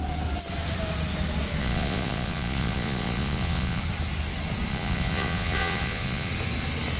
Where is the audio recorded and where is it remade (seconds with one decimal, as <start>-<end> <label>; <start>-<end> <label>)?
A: 0.0-1.6 recorded; 1.6-3.8 remade; 3.8-4.7 recorded; 4.7-6.3 remade; 6.3-7.0 recorded